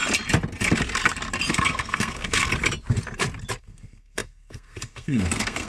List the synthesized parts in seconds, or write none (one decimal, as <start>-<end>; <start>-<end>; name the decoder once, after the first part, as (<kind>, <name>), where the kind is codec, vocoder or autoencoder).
1.5-2.5 (codec, SNAC); 3.6-5.7